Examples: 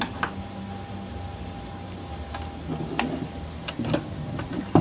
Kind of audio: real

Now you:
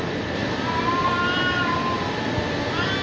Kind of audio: real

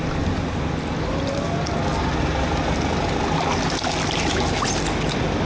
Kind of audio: real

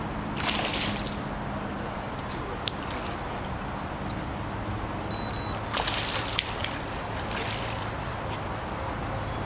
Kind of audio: real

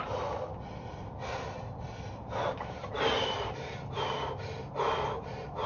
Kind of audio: real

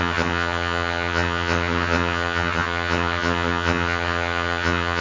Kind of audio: fake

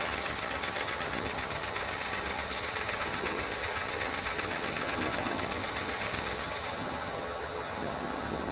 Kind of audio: fake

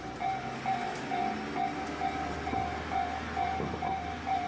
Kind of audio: real